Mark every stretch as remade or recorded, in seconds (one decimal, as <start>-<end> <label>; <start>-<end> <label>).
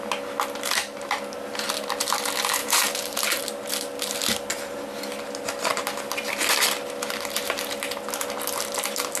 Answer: 0.0-2.6 recorded; 2.6-3.4 remade; 3.4-9.2 recorded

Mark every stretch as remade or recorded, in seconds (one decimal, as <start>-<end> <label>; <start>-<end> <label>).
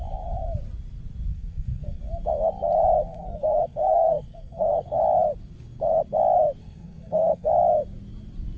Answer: 0.0-1.3 recorded; 1.3-2.0 remade; 2.0-3.1 recorded; 3.1-5.0 remade; 5.0-6.6 recorded; 6.6-7.5 remade; 7.5-8.6 recorded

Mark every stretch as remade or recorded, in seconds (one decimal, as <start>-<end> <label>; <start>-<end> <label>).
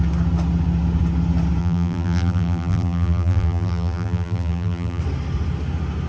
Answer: 0.0-1.6 recorded; 1.6-5.0 remade; 5.0-6.1 recorded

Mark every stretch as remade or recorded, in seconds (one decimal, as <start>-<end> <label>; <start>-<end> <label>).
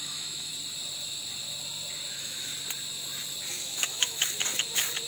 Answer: 0.0-0.5 remade; 0.5-2.1 recorded; 2.1-2.5 remade; 2.5-3.5 recorded; 3.5-4.2 remade; 4.2-5.1 recorded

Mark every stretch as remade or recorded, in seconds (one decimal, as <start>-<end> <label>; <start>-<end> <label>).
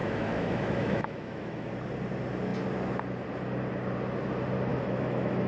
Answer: 0.0-1.7 remade; 1.7-4.7 recorded; 4.7-5.5 remade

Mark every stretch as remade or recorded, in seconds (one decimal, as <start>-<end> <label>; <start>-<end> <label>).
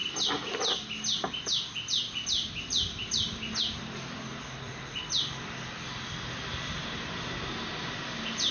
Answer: 0.0-8.5 recorded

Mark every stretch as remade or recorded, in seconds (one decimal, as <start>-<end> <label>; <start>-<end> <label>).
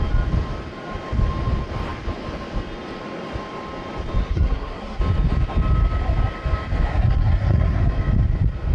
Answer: 0.0-4.2 recorded; 4.2-5.0 remade; 5.0-6.9 recorded; 6.9-7.8 remade; 7.8-8.7 recorded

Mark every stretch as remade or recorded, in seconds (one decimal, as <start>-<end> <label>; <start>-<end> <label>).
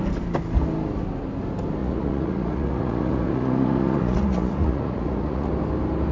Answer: 0.0-1.8 recorded; 1.8-5.5 remade; 5.5-6.1 recorded